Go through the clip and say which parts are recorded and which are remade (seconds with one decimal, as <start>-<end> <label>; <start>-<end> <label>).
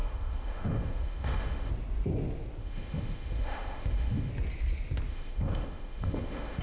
0.0-1.7 remade; 1.7-2.6 recorded; 2.6-4.3 remade; 4.3-5.1 recorded; 5.1-6.6 remade